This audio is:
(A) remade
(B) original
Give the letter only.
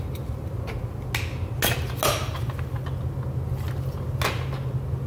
B